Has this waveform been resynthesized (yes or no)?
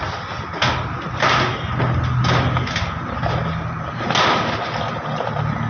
no